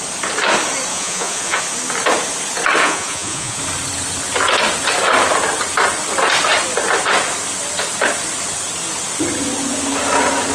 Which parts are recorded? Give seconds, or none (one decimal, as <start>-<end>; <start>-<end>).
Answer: 0.0-0.9; 1.6-2.8; 3.6-10.5